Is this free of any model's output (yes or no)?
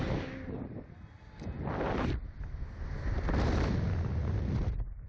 yes